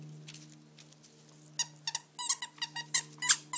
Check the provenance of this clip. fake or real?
real